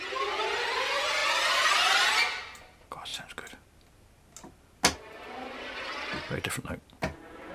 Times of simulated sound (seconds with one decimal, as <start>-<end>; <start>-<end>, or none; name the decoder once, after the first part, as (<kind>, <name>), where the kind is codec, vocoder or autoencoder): 1.2-2.1 (vocoder, BigVGAN v2)